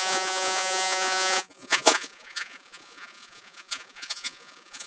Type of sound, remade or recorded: remade